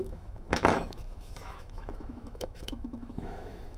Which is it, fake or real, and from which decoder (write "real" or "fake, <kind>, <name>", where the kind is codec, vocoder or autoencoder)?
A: fake, autoencoder, DAC-VAE